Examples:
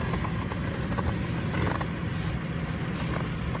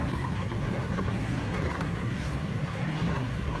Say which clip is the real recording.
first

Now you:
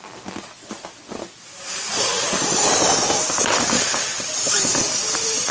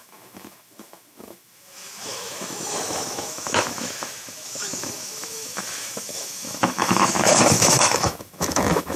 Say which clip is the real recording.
first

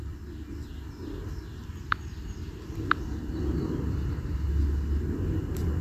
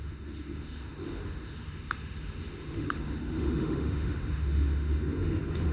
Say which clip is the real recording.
first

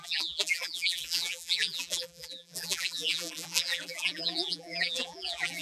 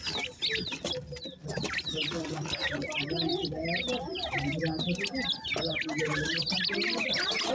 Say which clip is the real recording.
second